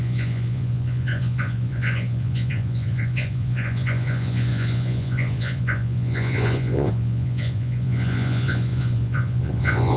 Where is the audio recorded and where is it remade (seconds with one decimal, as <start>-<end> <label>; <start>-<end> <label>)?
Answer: 0.0-10.0 remade